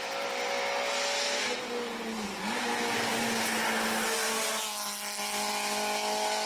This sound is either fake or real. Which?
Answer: real